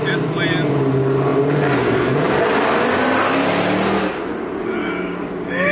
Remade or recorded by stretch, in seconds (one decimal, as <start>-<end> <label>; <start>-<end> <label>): 0.0-4.8 recorded; 4.8-5.7 remade

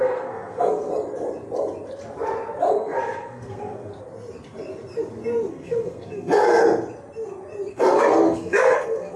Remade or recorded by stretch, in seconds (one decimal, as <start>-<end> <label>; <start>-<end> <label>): 0.0-0.9 remade; 0.9-2.7 recorded; 2.7-3.9 remade; 3.9-5.5 recorded; 5.5-6.6 remade; 6.6-7.7 recorded; 7.7-9.2 remade